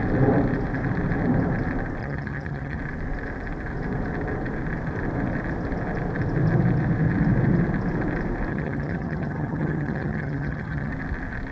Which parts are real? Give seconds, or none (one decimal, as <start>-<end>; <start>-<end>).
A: 0.0-2.0; 2.8-8.5; 10.9-11.5